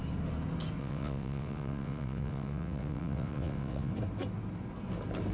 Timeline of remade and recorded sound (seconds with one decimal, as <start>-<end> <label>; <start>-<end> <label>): 0.0-0.8 recorded; 0.8-3.9 remade; 3.9-5.3 recorded